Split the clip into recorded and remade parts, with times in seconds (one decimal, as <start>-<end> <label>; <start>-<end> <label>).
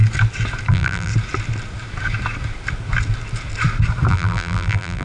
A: 0.0-0.7 recorded; 0.7-1.1 remade; 1.1-4.1 recorded; 4.1-5.0 remade